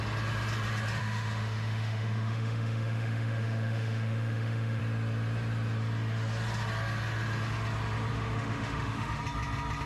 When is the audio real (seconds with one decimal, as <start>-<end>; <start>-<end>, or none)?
0.0-1.0; 4.8-8.1; 9.2-9.9